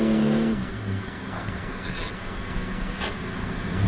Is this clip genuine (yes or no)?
no